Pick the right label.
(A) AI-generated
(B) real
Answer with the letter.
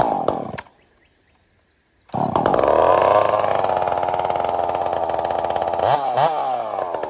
B